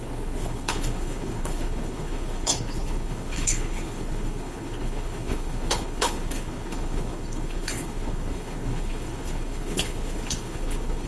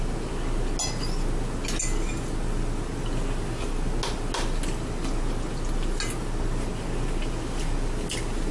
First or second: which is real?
second